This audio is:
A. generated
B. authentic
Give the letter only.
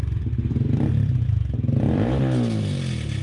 A